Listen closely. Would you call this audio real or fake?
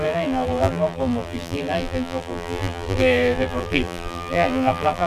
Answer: fake